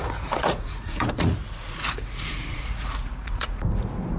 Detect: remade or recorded remade